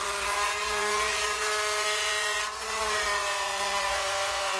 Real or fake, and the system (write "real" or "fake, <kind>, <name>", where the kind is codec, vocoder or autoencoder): fake, vocoder, Vocos